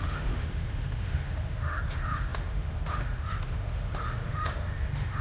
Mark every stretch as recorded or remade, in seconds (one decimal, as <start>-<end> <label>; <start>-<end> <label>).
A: 0.0-5.2 remade